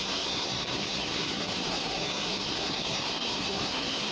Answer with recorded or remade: remade